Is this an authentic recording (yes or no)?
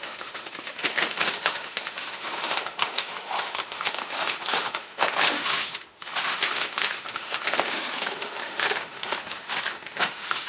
no